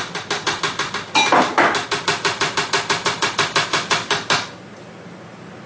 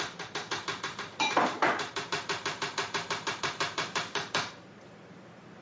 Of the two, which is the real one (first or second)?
first